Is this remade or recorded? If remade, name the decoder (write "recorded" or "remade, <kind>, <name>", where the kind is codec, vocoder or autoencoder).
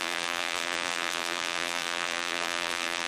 remade, vocoder, BigVGAN v2